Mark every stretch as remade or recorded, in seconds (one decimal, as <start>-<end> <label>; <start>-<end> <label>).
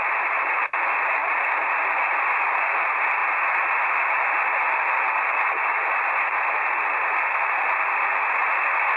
0.0-9.0 recorded